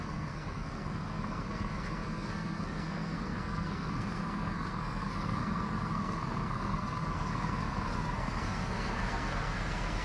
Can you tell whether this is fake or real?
fake